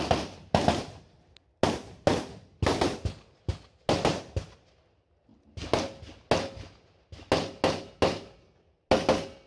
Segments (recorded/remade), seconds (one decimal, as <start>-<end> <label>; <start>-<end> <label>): 0.0-9.5 recorded